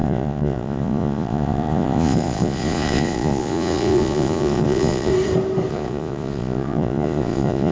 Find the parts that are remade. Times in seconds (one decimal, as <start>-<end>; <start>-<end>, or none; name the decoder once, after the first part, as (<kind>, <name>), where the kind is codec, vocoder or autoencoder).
0.0-5.1 (vocoder, Vocos); 5.7-7.7